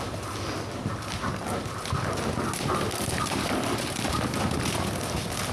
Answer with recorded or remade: recorded